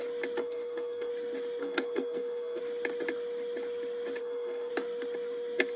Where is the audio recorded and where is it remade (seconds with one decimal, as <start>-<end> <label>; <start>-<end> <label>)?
0.0-0.4 recorded; 0.4-1.1 remade; 1.1-1.6 recorded; 1.6-2.6 remade; 2.6-4.2 recorded; 4.2-4.7 remade; 4.7-5.8 recorded